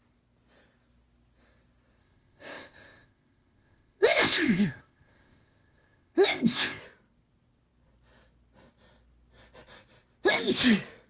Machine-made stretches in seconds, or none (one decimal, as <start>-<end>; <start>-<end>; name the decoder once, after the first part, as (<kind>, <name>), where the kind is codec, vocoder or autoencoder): 2.0-6.8 (codec, ZipCodec)